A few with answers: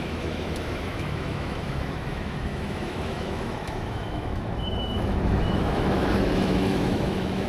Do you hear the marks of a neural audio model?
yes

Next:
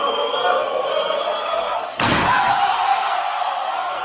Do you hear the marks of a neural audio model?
yes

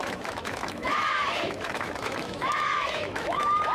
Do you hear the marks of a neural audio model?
yes